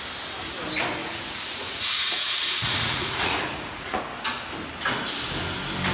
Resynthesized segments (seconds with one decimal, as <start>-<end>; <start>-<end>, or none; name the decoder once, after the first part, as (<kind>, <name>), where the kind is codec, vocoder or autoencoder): 1.0-4.0 (vocoder, Vocos)

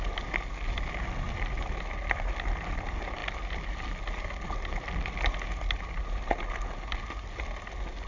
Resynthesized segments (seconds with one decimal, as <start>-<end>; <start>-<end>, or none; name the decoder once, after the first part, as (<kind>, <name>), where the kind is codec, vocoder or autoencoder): none

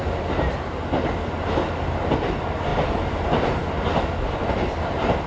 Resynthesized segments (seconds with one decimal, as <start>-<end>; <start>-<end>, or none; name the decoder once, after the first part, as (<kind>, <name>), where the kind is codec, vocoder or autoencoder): none

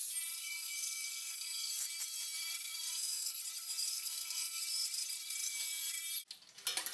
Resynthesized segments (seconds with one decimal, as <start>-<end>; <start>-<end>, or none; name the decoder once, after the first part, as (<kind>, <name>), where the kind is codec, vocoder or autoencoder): 0.4-1.7 (codec, SNAC); 2.9-3.4; 3.9-4.6

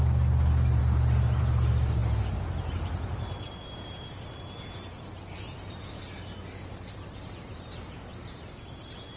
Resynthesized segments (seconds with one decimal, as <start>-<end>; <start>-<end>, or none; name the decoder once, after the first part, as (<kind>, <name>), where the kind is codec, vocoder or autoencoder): 5.1-5.7 (vocoder, BigVGAN v2)

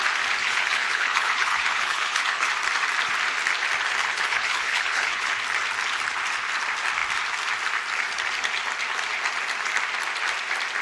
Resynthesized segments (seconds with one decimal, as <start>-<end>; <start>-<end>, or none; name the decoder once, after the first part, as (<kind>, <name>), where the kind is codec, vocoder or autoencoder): 0.4-2.5 (codec, HILCodec); 4.0-5.3

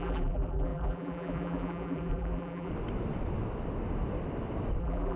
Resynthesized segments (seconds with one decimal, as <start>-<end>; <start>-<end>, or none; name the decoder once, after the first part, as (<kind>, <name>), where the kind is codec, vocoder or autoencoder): 0.0-2.7 (vocoder, BigVGAN v2); 4.8-5.2

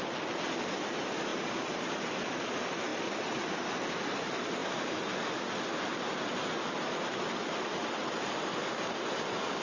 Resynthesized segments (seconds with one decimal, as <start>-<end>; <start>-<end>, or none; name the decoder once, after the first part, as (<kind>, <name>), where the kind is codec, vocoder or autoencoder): 1.3-2.1 (vocoder, BigVGAN v2); 2.9-3.4